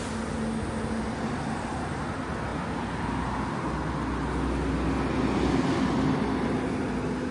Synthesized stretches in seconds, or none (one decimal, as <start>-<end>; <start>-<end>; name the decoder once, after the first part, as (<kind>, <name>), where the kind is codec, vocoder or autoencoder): none